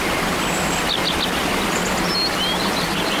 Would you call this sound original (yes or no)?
yes